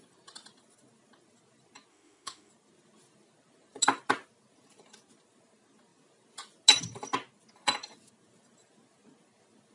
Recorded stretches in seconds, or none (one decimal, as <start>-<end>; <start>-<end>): 0.0-1.9; 2.5-9.7